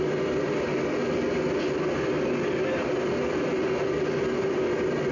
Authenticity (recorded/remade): recorded